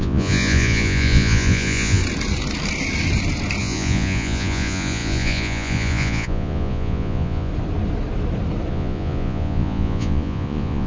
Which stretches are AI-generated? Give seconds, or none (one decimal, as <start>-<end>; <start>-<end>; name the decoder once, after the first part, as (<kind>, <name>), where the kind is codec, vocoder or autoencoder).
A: 0.0-2.0 (vocoder, Vocos); 3.6-7.5; 8.7-10.9